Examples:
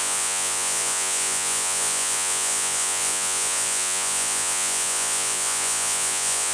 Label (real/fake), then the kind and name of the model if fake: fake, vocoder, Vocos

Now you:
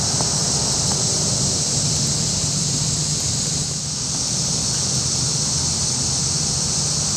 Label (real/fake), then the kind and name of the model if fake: real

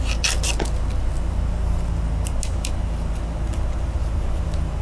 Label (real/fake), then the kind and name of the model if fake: real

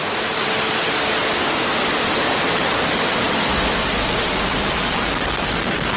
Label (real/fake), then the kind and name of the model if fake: real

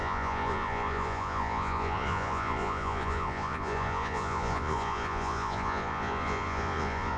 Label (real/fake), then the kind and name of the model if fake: fake, vocoder, Vocos